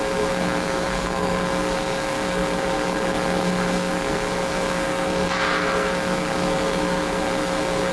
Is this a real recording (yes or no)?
no